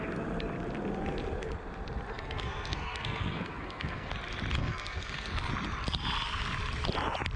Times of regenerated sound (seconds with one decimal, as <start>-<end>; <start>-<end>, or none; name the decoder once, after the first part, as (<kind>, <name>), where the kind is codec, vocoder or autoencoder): 2.1-4.1 (codec, SNAC); 4.6-5.5